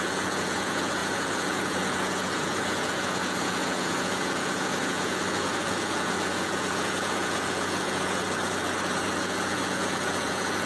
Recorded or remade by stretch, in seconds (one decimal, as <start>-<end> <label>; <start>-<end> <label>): 0.0-10.7 remade